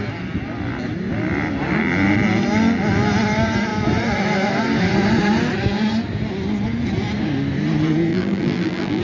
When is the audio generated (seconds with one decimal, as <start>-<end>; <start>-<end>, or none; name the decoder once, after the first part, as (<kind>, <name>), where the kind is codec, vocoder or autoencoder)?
8.1-9.0 (vocoder, BigVGAN v2)